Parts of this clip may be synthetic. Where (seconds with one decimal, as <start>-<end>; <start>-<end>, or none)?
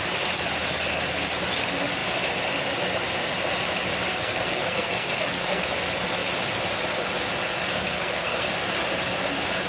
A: 4.1-5.6; 7.7-8.5